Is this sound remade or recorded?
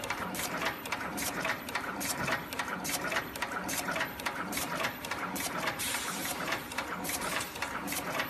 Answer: remade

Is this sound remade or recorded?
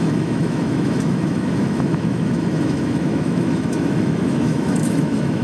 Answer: remade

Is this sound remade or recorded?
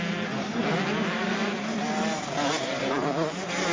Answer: remade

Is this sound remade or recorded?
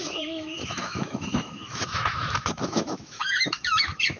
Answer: remade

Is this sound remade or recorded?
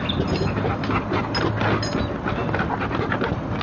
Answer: recorded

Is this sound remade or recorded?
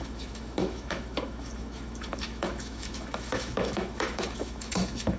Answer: remade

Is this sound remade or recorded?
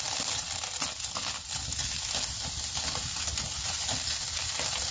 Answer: recorded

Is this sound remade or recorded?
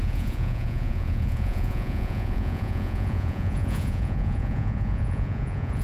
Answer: remade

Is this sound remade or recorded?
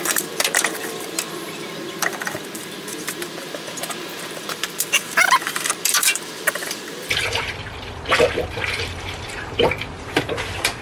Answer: remade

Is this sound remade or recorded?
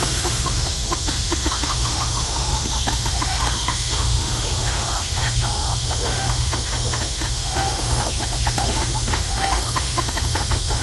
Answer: remade